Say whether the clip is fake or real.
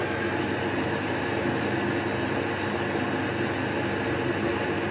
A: real